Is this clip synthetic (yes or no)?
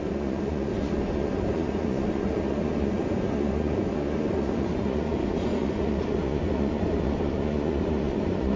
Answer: yes